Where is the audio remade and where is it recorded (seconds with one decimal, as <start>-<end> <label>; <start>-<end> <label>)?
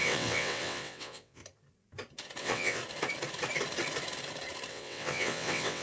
0.0-1.4 remade; 1.4-2.4 recorded; 2.4-2.8 remade; 2.8-4.7 recorded; 4.7-5.8 remade